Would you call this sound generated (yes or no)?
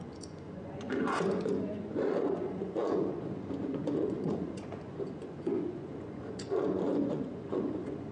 yes